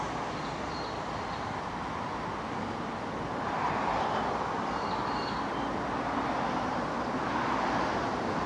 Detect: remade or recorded recorded